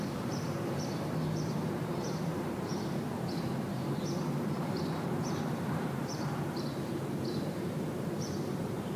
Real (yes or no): no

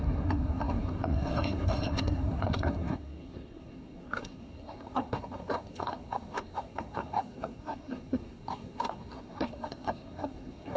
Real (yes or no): no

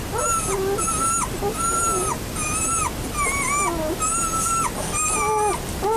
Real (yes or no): yes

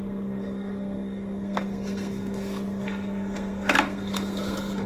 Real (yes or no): no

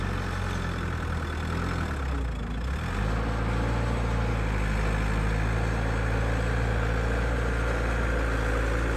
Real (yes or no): yes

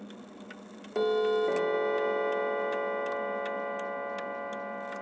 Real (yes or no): yes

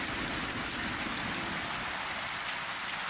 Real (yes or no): yes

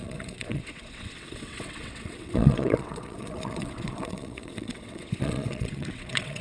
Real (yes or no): no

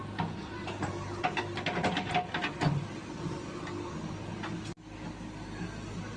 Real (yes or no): yes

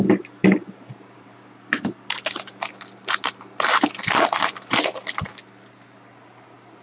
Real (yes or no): yes